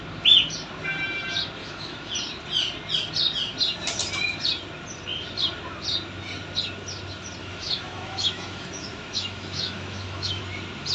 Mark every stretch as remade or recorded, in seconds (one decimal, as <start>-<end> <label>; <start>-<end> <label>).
0.0-1.6 recorded; 1.6-2.1 remade; 2.1-7.4 recorded; 7.4-10.4 remade; 10.4-10.9 recorded